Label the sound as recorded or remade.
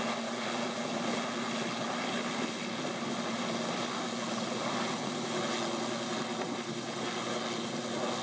recorded